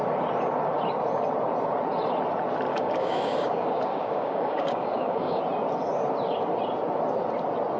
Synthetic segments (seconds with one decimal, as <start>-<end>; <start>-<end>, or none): 2.7-5.4